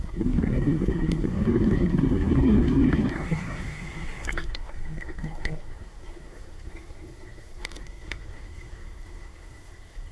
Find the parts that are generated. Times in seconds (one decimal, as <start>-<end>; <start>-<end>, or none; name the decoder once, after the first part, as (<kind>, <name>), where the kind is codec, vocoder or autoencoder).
0.0-10.1 (codec, SNAC)